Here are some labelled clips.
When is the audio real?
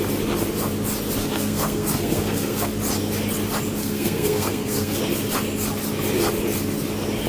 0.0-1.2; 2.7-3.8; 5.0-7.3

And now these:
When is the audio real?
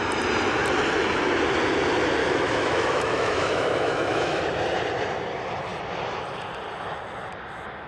0.0-2.2; 4.4-7.9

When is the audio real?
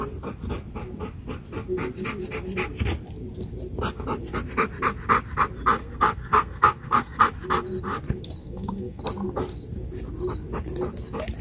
0.0-5.8; 7.2-8.4; 9.0-11.4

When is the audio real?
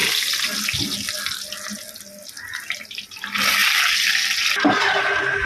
0.0-3.6; 5.0-5.5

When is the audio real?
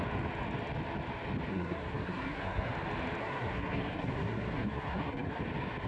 0.0-1.5; 2.7-3.2; 5.4-5.9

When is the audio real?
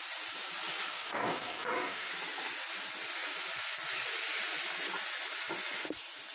0.0-0.9; 2.1-6.3